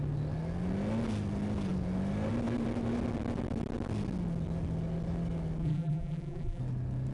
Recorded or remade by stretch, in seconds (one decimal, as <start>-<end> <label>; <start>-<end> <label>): 0.0-5.6 recorded; 5.6-6.6 remade; 6.6-7.1 recorded